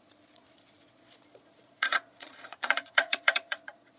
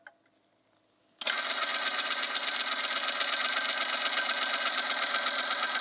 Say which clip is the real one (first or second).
second